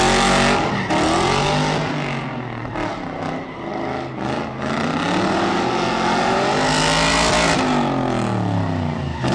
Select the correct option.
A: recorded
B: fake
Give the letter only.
A